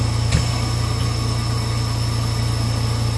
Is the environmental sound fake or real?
real